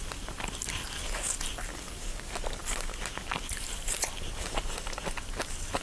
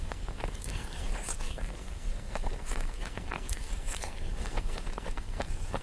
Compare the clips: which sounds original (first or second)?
first